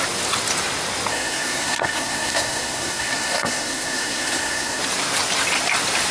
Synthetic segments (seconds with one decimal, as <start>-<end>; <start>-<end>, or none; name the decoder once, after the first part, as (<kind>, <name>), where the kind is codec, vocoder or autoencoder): 1.1-4.8 (codec, SNAC)